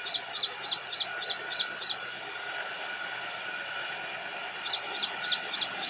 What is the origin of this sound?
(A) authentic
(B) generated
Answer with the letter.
A